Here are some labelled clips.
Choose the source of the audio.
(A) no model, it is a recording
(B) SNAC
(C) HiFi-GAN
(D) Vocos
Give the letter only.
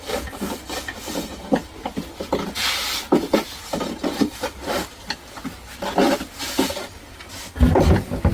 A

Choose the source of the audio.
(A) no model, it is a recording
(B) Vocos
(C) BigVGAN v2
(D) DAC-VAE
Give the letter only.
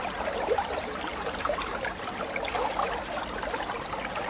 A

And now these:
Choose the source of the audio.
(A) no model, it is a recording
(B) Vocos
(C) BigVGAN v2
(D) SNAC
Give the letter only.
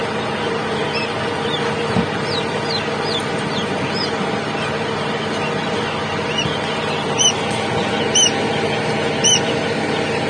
A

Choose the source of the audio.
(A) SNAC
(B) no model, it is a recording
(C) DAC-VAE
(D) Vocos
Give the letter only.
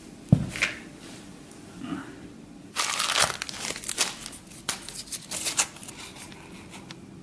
B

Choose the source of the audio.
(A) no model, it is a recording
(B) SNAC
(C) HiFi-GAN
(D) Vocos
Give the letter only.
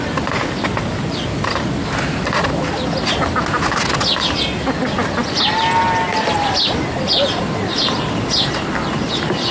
A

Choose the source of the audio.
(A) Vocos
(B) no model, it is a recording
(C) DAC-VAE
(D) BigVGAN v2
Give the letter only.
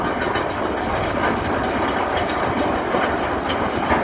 B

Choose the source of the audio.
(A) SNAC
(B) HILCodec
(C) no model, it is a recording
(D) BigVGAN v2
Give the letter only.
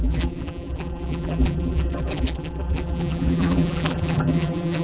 D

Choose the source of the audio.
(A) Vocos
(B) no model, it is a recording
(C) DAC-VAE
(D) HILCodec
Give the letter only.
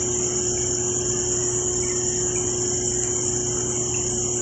B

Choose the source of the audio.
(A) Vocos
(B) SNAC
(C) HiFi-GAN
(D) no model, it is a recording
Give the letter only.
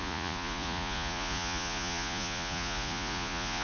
A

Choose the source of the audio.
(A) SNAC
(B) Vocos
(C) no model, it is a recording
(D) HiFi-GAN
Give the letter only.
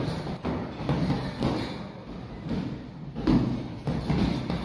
C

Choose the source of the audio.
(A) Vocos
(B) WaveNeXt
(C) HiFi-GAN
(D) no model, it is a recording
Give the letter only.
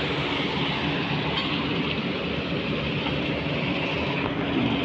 D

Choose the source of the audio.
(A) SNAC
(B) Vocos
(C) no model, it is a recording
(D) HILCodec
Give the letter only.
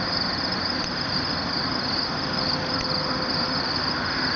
C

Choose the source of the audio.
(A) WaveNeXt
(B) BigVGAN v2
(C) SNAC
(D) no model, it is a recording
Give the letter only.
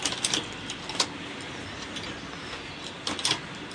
D